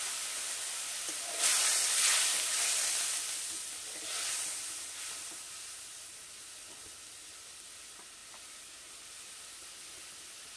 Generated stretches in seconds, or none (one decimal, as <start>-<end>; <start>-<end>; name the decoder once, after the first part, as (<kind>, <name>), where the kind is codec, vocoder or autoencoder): none